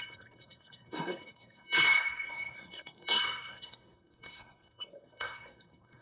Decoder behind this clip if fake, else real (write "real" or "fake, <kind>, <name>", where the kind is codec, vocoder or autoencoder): fake, codec, SNAC